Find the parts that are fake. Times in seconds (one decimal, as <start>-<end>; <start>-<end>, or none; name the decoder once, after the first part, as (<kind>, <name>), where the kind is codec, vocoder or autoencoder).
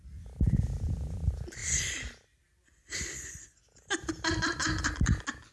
1.6-4.9 (vocoder, BigVGAN v2)